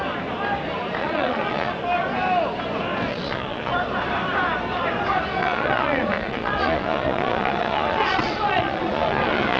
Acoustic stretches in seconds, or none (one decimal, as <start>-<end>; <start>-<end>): 0.0-1.0; 1.7-3.1; 3.7-5.4